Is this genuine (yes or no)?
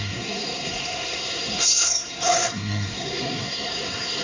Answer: no